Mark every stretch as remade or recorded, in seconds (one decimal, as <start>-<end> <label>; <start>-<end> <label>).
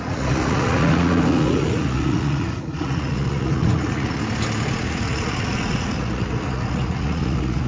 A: 0.0-4.2 remade; 4.2-4.8 recorded; 4.8-7.7 remade